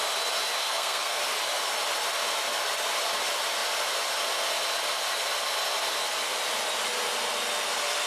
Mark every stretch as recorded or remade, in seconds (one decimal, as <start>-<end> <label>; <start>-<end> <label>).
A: 0.0-0.6 recorded; 0.6-1.2 remade; 1.2-8.1 recorded